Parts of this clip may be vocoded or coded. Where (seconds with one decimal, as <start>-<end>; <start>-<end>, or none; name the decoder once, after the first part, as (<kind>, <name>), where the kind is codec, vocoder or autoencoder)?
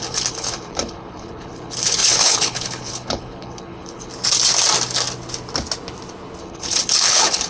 0.0-4.1 (codec, HILCodec); 6.4-7.5